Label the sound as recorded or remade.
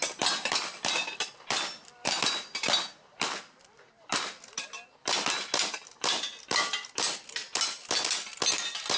remade